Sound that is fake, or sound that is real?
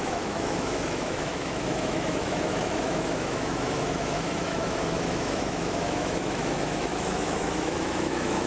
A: fake